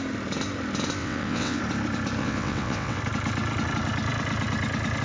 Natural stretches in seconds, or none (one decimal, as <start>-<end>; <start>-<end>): 0.0-1.0; 1.6-2.2; 3.0-5.0